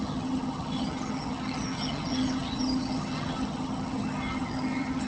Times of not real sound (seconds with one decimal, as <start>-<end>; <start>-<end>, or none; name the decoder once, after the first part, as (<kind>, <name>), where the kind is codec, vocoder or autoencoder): 0.0-5.1 (vocoder, HiFi-GAN)